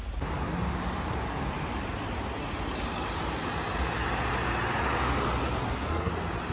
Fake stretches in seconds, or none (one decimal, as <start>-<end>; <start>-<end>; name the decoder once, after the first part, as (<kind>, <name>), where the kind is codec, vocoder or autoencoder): 5.6-6.1 (codec, SNAC)